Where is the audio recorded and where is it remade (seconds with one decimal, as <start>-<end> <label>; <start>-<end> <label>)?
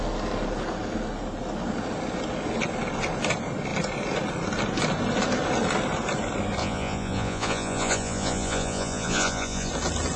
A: 0.0-6.6 recorded; 6.6-9.7 remade; 9.7-10.2 recorded